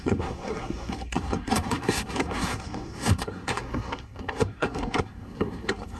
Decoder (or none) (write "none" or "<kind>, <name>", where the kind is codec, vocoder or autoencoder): codec, SNAC